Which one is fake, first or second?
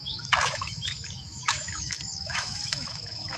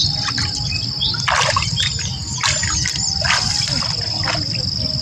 first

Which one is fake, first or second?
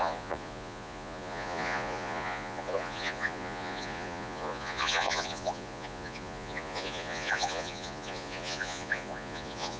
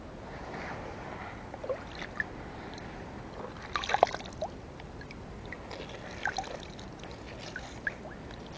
first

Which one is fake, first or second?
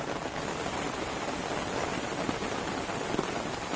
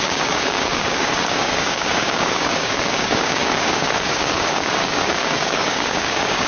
second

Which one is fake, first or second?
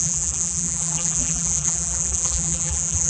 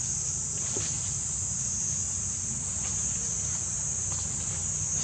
first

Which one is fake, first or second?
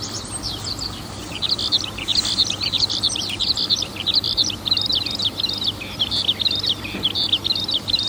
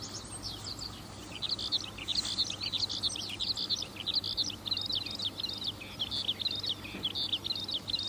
first